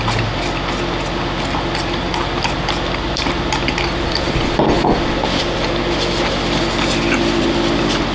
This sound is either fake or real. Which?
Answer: real